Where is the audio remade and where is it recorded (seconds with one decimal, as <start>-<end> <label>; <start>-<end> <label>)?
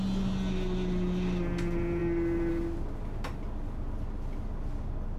0.0-5.2 recorded